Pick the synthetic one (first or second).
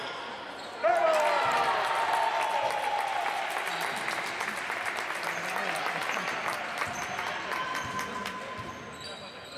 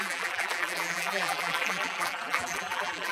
second